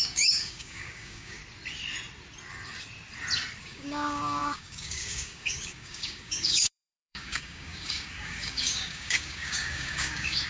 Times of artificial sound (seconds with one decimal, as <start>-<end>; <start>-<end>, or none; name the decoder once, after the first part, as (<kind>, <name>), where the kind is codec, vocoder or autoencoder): 0.0-1.4 (codec, DAC); 3.6-10.5